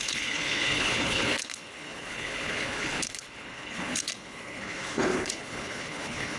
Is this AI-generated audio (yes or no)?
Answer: yes